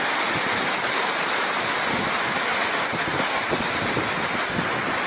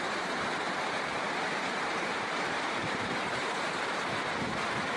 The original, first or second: first